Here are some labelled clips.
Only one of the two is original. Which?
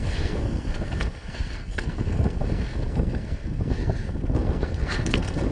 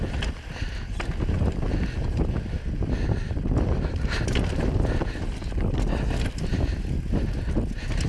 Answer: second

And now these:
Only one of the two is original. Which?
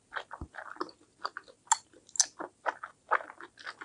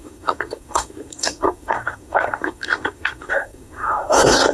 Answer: first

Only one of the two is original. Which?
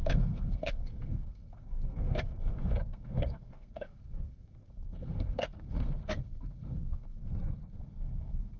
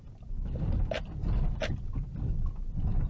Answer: second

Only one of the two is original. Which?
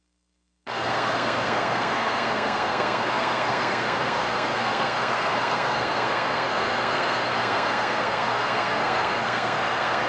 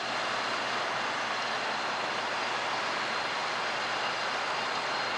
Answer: second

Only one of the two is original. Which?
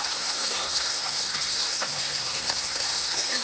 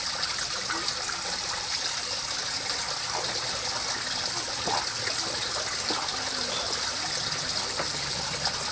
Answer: second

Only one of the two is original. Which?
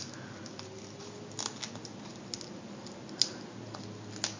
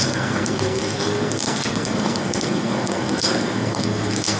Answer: first